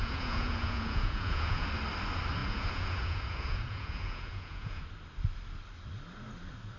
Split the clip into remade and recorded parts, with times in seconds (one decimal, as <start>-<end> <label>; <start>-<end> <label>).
0.0-1.7 remade; 1.7-2.4 recorded; 2.4-4.8 remade; 4.8-6.8 recorded